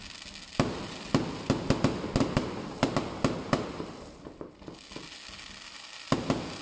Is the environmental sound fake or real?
real